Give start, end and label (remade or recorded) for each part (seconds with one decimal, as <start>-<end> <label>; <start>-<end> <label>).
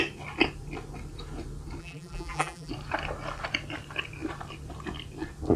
0.0-1.8 recorded; 1.8-2.7 remade; 2.7-5.6 recorded